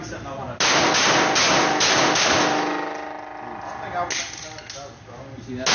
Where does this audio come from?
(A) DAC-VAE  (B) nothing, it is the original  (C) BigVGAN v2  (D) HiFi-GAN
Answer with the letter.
B